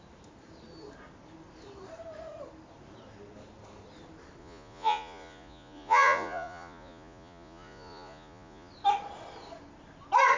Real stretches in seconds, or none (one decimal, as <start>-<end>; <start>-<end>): 0.0-4.4; 8.7-10.4